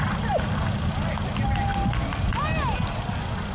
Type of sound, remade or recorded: recorded